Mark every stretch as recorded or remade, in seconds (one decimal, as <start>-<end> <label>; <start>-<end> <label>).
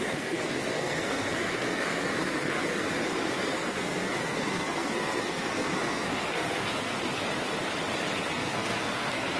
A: 0.0-6.9 remade; 6.9-8.3 recorded; 8.3-9.4 remade